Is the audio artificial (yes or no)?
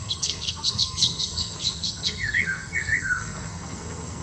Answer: yes